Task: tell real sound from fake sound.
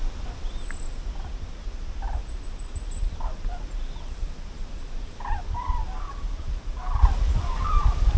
real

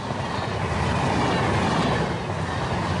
real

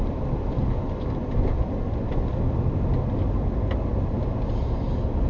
real